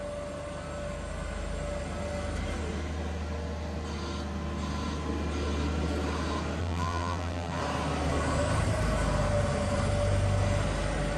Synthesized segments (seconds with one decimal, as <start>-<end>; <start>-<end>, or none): 6.6-7.6